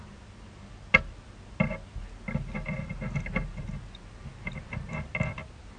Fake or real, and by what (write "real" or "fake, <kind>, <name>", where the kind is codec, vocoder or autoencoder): real